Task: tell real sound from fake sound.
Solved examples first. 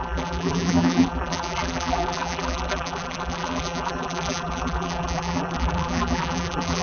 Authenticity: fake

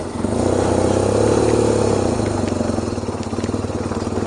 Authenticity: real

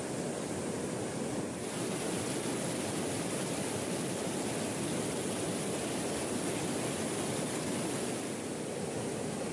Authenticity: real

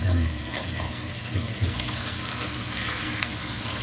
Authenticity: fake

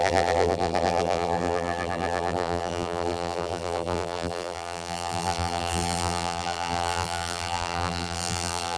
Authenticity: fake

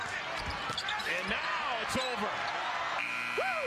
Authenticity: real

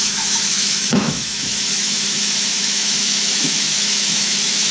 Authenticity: fake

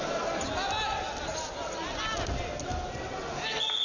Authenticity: real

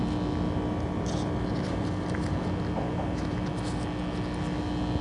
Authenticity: real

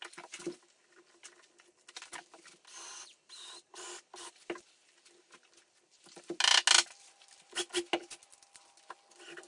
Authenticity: real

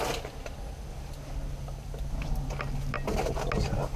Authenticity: real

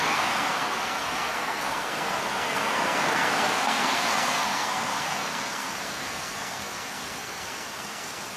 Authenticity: fake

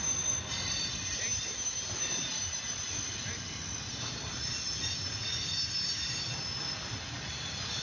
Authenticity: real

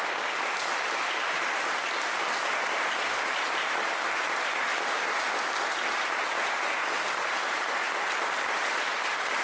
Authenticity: real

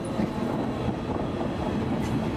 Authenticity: real